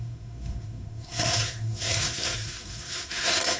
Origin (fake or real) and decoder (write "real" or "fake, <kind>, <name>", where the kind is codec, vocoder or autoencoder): fake, codec, SNAC